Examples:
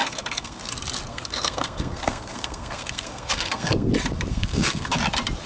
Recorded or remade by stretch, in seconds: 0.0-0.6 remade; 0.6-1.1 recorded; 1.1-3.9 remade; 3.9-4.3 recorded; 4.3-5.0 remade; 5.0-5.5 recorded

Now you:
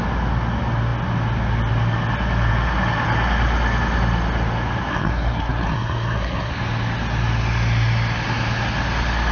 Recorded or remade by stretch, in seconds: 0.0-4.9 recorded; 4.9-6.5 remade; 6.5-9.3 recorded

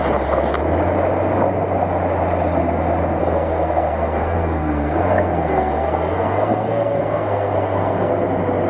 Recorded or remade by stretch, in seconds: 0.0-3.2 recorded; 3.2-8.1 remade; 8.1-8.7 recorded

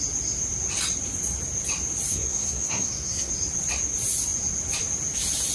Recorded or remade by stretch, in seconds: 0.0-2.1 recorded; 2.1-3.3 remade; 3.3-5.5 recorded

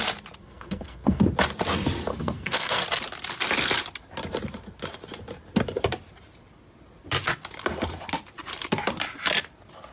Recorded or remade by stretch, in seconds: 0.0-0.4 recorded; 0.4-1.2 remade; 1.2-2.1 recorded; 2.1-2.8 remade; 2.8-9.9 recorded

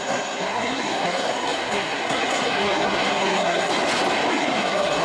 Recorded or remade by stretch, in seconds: 0.0-3.7 remade; 3.7-4.3 recorded; 4.3-5.0 remade

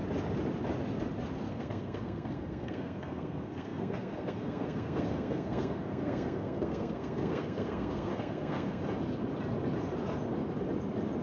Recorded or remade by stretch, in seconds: 0.0-1.5 recorded; 1.5-8.8 remade; 8.8-11.2 recorded